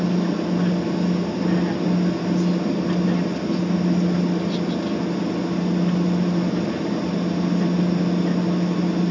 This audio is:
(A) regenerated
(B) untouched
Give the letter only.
B